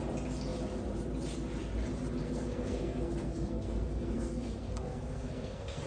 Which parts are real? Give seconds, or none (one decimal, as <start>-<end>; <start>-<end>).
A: 0.0-2.2